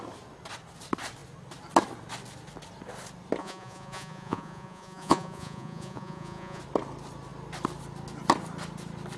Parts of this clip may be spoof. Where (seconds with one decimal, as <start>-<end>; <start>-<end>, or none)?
3.4-6.6